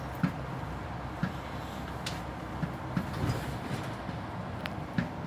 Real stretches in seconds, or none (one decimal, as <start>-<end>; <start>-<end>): 0.0-5.3